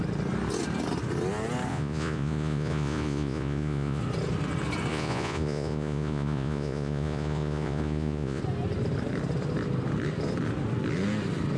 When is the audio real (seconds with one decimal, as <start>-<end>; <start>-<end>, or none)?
0.0-1.7; 4.0-4.9; 8.4-11.6